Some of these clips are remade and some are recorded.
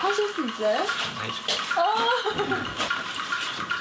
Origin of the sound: recorded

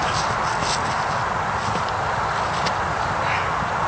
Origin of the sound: recorded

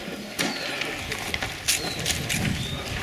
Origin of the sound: recorded